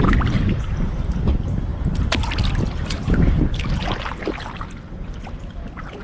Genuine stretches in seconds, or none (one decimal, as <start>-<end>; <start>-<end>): 0.0-6.0

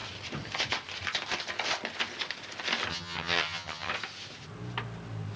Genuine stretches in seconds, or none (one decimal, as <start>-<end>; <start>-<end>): 0.0-2.9; 3.9-5.4